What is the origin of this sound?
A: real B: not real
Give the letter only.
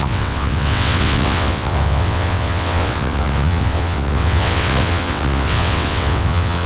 B